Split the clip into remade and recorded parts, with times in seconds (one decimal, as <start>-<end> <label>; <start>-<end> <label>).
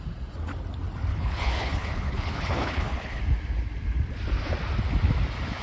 0.0-1.1 recorded; 1.1-3.2 remade; 3.2-5.6 recorded